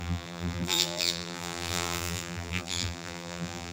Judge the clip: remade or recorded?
remade